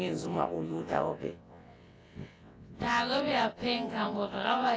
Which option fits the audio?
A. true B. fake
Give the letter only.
B